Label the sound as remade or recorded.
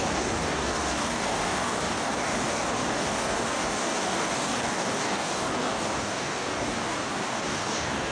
remade